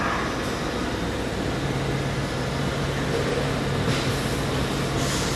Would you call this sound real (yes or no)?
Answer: yes